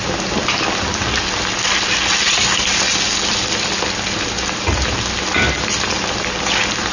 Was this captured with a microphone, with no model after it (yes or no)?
yes